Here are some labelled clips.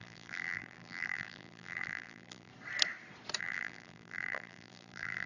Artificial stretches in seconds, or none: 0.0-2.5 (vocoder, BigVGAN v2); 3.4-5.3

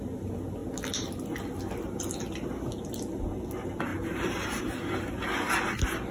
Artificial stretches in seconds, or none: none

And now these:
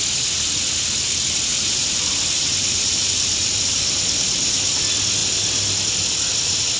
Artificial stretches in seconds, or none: 1.5-4.8 (vocoder, BigVGAN v2)

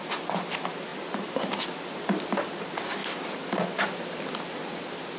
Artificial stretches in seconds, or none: 0.9-1.4 (vocoder, BigVGAN v2)